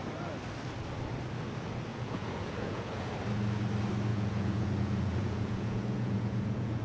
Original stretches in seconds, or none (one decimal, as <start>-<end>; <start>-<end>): 0.0-1.9; 3.1-4.1